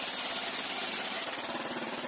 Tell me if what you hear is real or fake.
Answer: fake